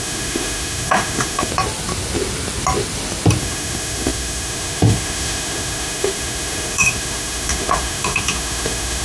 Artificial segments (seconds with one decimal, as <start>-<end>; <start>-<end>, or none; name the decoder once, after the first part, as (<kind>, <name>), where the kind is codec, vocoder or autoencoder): 0.0-1.5 (autoencoder, DAC-VAE); 3.4-9.0